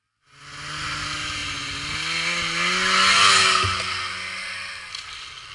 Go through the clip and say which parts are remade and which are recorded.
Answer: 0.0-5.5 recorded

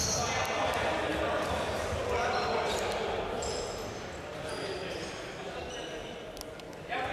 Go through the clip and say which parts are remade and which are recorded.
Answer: 0.0-7.1 recorded

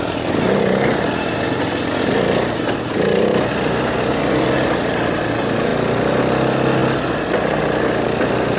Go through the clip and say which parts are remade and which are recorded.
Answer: 0.0-8.6 recorded

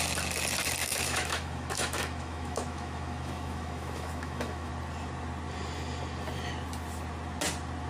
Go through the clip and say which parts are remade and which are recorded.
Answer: 0.0-0.8 recorded; 0.8-4.7 remade; 4.7-7.9 recorded

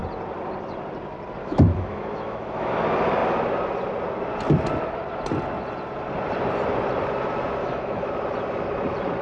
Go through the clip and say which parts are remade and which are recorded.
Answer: 0.0-1.4 recorded; 1.4-2.7 remade; 2.7-7.6 recorded; 7.6-8.1 remade; 8.1-9.2 recorded

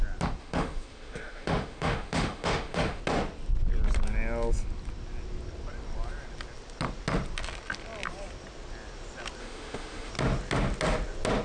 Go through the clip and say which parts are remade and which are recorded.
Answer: 0.0-0.4 recorded; 0.4-3.0 remade; 3.0-9.4 recorded; 9.4-10.1 remade; 10.1-11.4 recorded